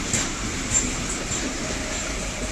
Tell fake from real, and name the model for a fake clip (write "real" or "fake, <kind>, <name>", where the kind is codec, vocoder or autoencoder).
real